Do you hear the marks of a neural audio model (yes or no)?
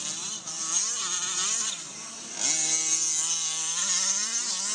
no